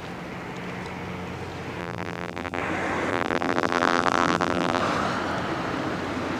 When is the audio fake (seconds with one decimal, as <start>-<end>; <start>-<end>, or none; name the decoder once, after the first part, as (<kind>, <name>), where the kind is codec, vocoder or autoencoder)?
1.8-2.6 (vocoder, BigVGAN v2); 3.1-4.8